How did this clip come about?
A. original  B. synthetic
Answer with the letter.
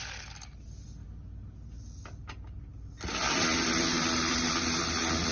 A